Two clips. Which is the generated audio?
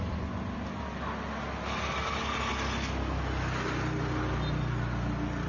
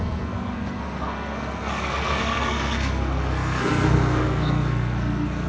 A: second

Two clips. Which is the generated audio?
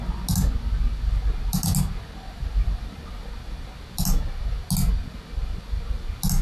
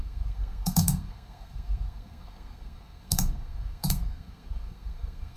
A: second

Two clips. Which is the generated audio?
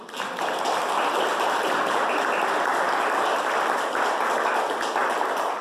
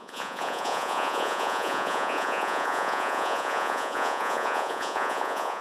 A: second